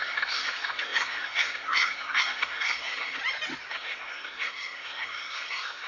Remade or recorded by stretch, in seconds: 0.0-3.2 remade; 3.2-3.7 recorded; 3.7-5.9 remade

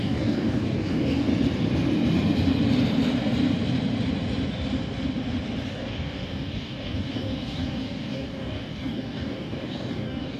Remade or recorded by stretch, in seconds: 0.0-1.3 remade; 1.3-5.7 recorded; 5.7-10.4 remade

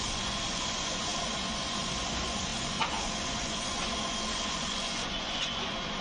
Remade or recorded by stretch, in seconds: 0.0-6.0 remade

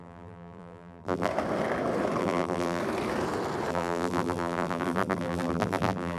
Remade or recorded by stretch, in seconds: 0.0-1.3 remade; 1.3-2.2 recorded; 2.2-2.8 remade; 2.8-3.7 recorded; 3.7-6.2 remade

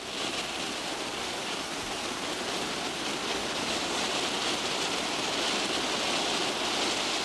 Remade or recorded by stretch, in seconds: 0.0-1.1 recorded; 1.1-1.7 remade; 1.7-3.2 recorded; 3.2-4.0 remade; 4.0-7.2 recorded

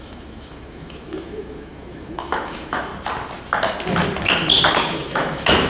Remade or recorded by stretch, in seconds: 0.0-2.9 remade; 2.9-4.9 recorded; 4.9-5.7 remade

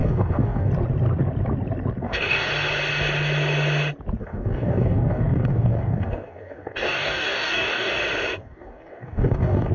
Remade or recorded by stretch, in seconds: 0.0-0.7 remade; 0.7-2.0 recorded; 2.0-2.5 remade; 2.5-4.2 recorded; 4.2-7.9 remade; 7.9-8.4 recorded; 8.4-9.7 remade

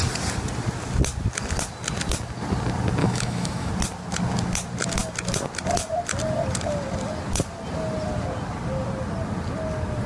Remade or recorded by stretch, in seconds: 0.0-3.0 recorded; 3.0-3.7 remade; 3.7-10.1 recorded